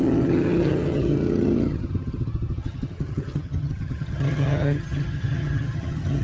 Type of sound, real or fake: fake